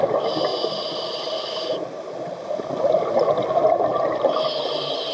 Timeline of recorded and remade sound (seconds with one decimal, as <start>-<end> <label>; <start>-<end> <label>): 0.0-5.1 recorded

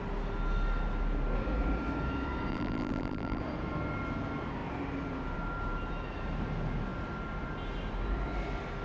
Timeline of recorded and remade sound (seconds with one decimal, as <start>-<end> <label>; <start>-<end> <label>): 0.0-2.5 recorded; 2.5-3.4 remade; 3.4-8.8 recorded